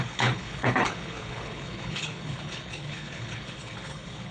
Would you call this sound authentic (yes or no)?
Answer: no